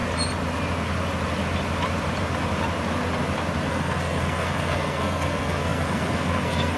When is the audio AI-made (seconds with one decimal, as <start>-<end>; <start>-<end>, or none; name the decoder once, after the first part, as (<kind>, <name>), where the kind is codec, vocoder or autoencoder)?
3.7-6.8 (codec, SNAC)